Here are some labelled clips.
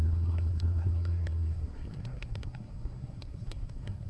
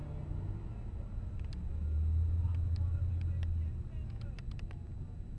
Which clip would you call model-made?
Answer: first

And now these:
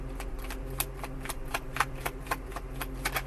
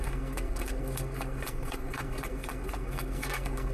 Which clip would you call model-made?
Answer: second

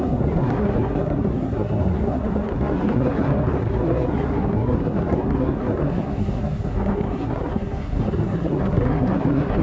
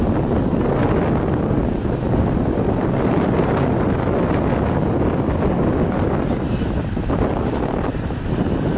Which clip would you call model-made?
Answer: first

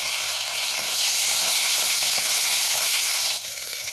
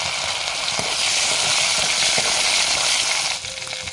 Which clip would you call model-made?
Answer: first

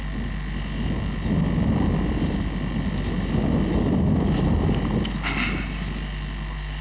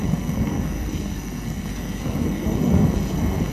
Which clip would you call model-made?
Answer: second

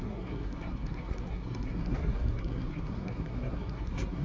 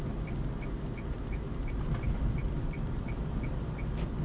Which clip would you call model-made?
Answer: first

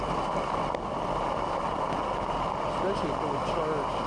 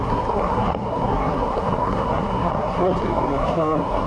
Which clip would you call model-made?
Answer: second